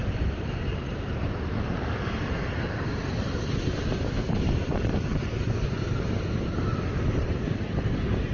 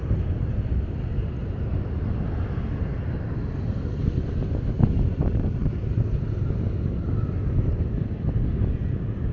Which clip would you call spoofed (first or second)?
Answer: first